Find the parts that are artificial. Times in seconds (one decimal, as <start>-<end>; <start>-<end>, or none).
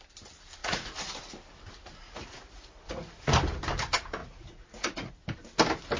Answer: 0.6-1.1; 2.0-3.3; 4.2-5.1